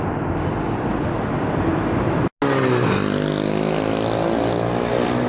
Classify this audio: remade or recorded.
recorded